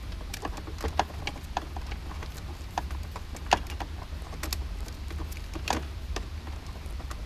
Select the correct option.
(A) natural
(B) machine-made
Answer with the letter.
A